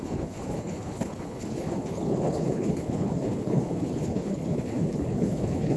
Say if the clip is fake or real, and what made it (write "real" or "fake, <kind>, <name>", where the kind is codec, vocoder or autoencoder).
fake, codec, HILCodec